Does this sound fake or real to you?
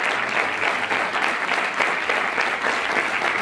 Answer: real